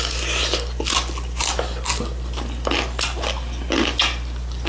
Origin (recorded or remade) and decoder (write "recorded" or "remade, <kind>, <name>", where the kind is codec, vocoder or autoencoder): recorded